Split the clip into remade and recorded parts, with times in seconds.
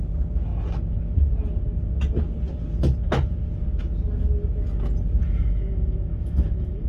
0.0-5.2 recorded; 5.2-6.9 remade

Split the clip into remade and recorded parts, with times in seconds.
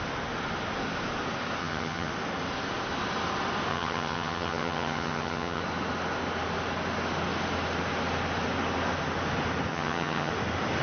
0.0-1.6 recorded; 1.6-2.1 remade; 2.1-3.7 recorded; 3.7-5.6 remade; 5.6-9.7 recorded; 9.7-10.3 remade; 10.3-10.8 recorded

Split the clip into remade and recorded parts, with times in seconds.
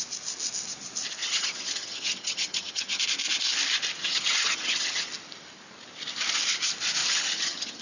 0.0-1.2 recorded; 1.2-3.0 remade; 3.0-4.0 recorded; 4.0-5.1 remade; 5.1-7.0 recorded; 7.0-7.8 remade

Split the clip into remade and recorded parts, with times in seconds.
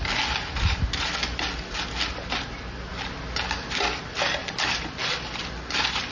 0.0-6.1 recorded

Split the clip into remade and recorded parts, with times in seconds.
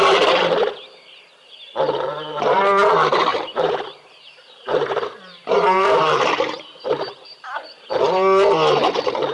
0.0-2.1 recorded; 2.1-2.6 remade; 2.6-3.3 recorded; 3.3-8.0 remade; 8.0-9.3 recorded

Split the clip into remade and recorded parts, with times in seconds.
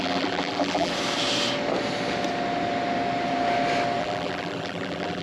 0.0-0.9 remade; 0.9-4.0 recorded; 4.0-5.2 remade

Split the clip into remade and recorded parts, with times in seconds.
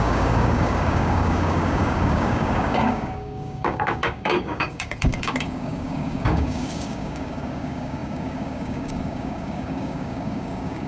0.0-10.9 remade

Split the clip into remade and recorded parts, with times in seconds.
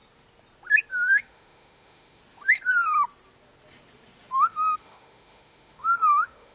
0.0-0.9 recorded; 0.9-2.2 remade; 2.2-4.3 recorded; 4.3-6.5 remade